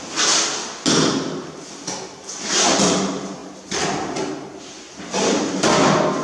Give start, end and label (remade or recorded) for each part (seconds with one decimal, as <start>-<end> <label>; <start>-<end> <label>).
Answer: 0.0-6.2 recorded